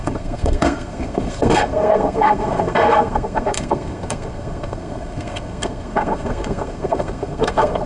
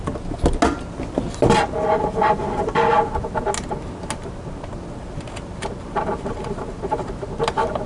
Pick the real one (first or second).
second